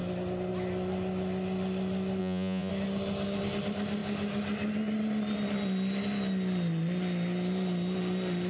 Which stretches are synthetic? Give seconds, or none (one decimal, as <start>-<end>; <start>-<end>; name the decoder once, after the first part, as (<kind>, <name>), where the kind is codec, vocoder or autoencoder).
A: 2.2-2.7 (vocoder, Vocos)